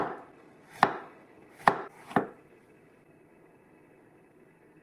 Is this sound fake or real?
real